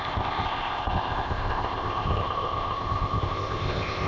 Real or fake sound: fake